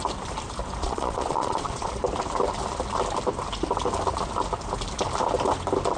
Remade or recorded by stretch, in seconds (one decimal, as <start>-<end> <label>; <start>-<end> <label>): 0.0-0.8 recorded; 0.8-1.9 remade; 1.9-6.0 recorded

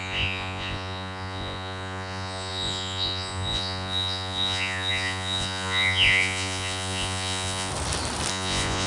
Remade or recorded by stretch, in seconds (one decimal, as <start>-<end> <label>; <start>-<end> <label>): 0.0-7.7 remade; 7.7-8.3 recorded; 8.3-8.9 remade

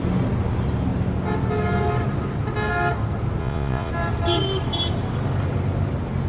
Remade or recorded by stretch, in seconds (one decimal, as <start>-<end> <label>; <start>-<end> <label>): 0.0-3.4 recorded; 3.4-3.9 remade; 3.9-6.3 recorded

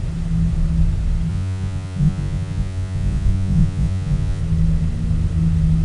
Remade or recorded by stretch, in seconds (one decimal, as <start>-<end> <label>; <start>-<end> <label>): 0.0-1.3 recorded; 1.3-4.4 remade; 4.4-5.8 recorded